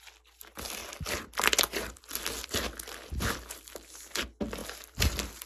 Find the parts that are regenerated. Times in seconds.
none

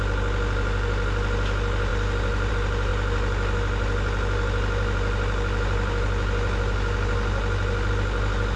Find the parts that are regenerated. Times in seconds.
none

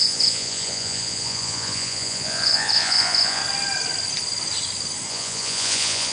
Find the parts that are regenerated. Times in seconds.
0.0-3.4 (vocoder, Vocos); 5.1-6.1